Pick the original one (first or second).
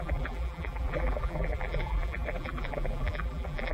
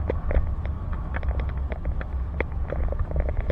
second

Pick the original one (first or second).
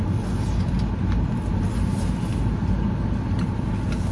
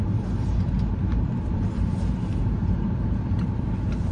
first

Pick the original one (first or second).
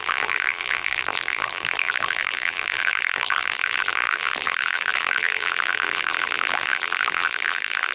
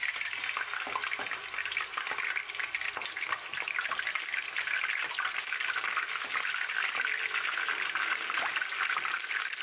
second